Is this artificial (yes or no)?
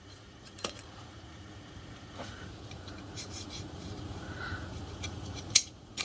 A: yes